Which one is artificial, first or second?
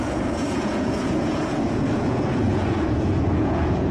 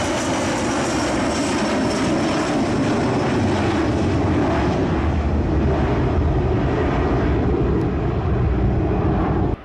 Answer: first